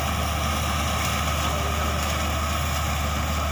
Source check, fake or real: real